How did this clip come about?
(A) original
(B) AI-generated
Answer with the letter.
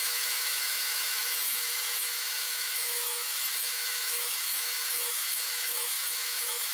B